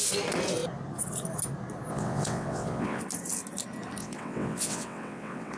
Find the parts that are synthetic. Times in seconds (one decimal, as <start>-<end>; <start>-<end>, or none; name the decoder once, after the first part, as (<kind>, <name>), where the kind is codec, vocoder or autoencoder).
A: 1.9-3.0 (vocoder, WaveNeXt); 4.0-5.6